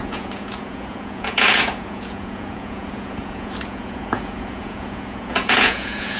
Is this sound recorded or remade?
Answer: remade